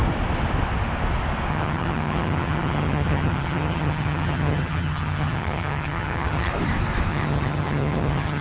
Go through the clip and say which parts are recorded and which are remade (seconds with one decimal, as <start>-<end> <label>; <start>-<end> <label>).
0.0-1.5 recorded; 1.5-6.5 remade; 6.5-7.1 recorded; 7.1-8.4 remade